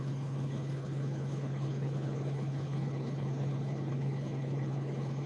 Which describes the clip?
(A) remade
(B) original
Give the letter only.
A